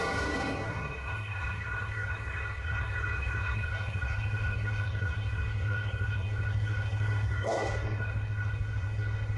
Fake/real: fake